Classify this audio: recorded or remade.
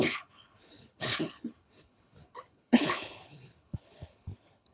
remade